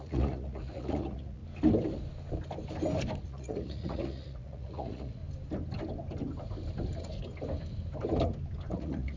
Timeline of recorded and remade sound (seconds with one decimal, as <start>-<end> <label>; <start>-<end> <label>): 0.0-1.4 remade; 1.4-3.2 recorded; 3.2-5.2 remade; 5.2-8.7 recorded; 8.7-9.2 remade